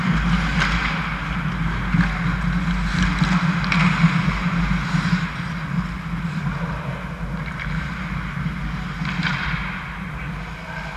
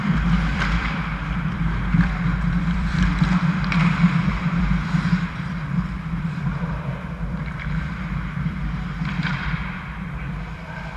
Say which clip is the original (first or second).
first